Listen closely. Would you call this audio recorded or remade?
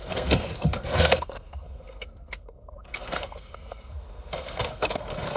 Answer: remade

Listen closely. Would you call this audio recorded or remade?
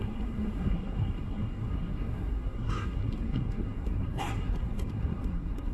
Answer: remade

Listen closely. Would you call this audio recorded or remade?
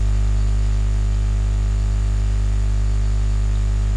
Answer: recorded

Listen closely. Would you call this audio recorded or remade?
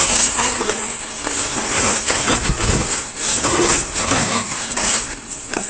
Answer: remade